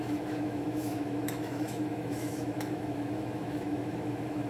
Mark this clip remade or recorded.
remade